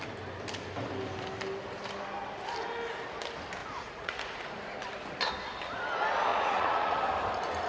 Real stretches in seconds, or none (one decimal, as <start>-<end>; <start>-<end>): 0.0-3.6; 4.6-6.3; 7.0-7.7